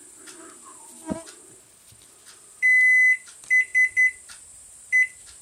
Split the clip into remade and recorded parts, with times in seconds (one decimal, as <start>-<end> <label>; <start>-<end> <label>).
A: 0.0-5.4 recorded